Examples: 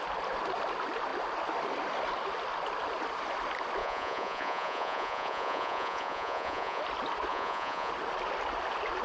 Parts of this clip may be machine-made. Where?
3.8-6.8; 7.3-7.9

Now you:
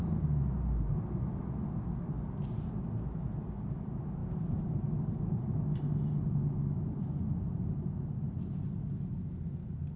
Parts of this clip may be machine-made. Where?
none

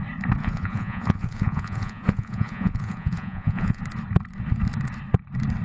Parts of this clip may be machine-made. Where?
0.4-3.8

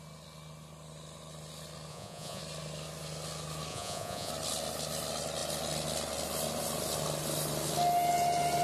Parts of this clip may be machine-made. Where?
1.9-2.4; 3.7-4.3